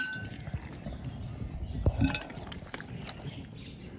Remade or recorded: recorded